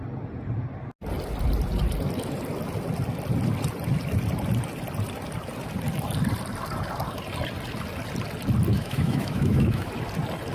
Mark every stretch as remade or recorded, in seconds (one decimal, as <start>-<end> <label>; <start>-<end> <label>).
0.0-8.7 recorded; 8.7-9.9 remade; 9.9-10.5 recorded